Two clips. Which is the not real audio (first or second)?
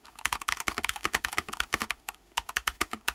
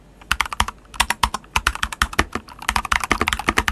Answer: first